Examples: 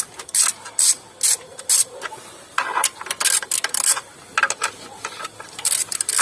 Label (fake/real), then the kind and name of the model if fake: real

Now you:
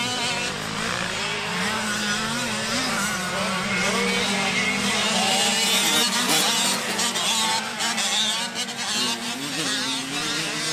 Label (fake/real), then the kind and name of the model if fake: real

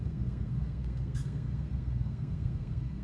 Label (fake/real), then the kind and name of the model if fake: fake, codec, SNAC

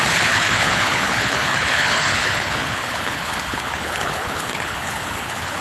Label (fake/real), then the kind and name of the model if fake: fake, codec, HILCodec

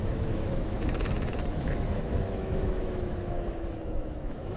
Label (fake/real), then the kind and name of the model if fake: fake, autoencoder, DAC-VAE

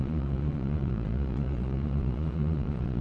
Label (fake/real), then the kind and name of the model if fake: fake, vocoder, Vocos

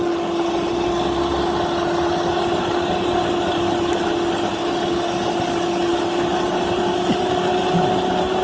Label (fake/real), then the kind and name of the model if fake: real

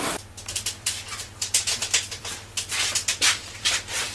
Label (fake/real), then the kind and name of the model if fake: fake, vocoder, BigVGAN v2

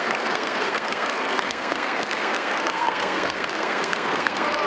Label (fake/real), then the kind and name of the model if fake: fake, codec, SNAC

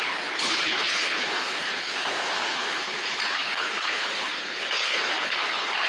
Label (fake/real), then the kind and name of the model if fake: fake, codec, HILCodec